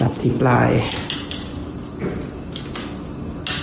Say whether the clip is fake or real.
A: real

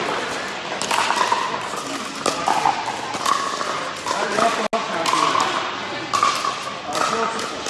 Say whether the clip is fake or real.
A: real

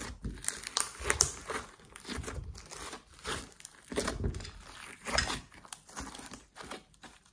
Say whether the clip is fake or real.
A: real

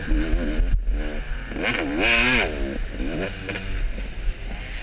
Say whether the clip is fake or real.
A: real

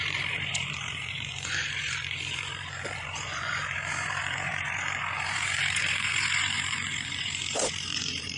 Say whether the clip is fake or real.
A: fake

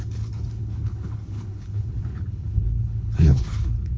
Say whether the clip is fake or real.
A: fake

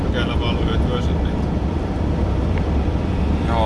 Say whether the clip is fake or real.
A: real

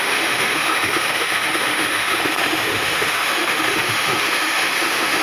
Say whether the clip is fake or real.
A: fake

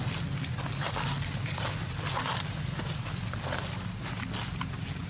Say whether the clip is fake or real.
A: real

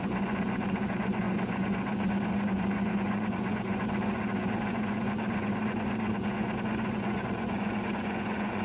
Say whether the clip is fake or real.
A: fake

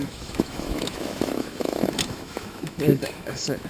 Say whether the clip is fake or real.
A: fake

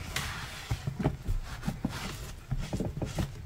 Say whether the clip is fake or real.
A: real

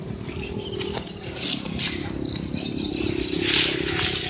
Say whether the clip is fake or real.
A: real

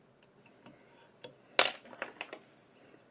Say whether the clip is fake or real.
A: real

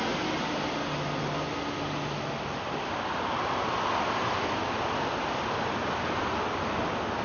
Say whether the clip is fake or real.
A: real